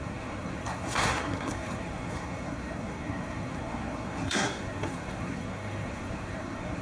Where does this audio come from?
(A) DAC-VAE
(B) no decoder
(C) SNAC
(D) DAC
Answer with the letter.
C